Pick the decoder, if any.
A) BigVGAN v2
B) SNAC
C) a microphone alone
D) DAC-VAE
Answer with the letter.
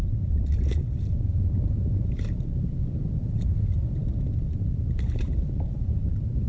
A